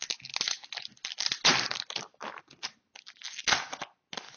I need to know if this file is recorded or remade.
recorded